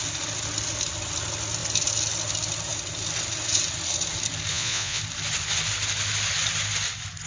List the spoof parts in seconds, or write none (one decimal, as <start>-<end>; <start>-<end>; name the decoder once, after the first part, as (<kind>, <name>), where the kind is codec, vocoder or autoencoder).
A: 4.5-5.0 (vocoder, Vocos)